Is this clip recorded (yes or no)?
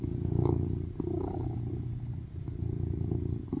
yes